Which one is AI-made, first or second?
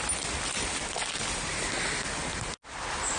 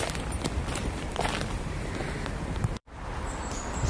second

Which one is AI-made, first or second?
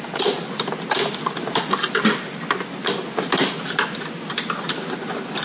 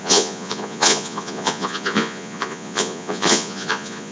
second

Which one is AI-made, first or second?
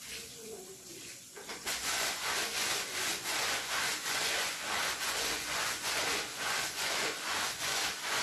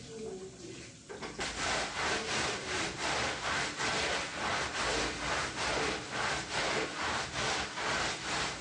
first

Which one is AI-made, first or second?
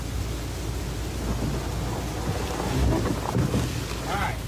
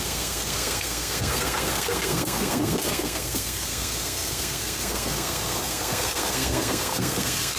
second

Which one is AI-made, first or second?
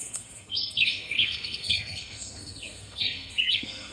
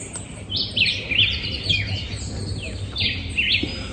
first